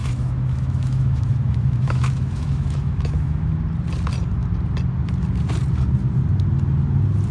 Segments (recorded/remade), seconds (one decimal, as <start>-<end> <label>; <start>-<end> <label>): 0.0-3.5 remade; 3.5-7.3 recorded